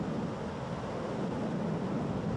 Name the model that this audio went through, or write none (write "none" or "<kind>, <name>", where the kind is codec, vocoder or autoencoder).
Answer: none